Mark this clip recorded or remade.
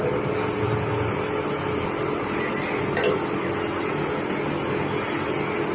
recorded